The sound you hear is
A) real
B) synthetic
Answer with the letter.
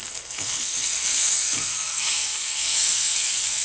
B